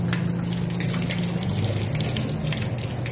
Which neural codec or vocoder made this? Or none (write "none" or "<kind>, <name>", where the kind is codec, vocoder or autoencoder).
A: none